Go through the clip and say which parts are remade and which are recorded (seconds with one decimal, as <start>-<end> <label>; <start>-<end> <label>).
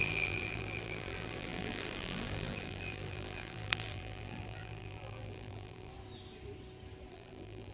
0.0-5.9 remade; 5.9-7.1 recorded; 7.1-7.7 remade